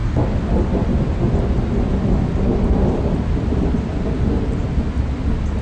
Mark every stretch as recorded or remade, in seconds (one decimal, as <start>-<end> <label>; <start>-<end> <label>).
0.0-5.6 recorded